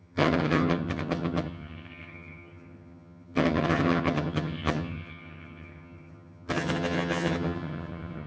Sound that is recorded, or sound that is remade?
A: remade